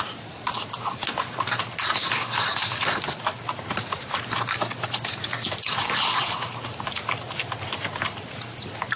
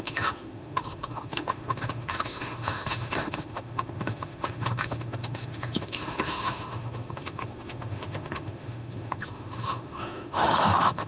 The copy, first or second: second